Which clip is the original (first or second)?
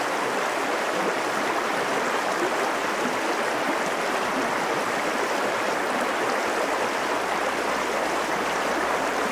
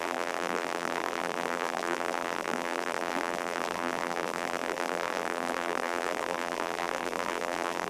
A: first